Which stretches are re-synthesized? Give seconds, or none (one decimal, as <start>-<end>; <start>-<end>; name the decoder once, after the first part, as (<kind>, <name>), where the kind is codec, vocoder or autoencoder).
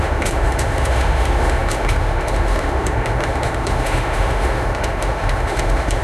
0.0-6.0 (autoencoder, DAC-VAE)